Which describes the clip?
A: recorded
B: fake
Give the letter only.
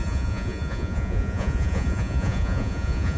B